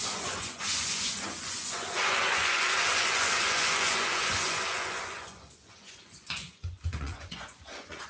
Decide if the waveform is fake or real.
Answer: fake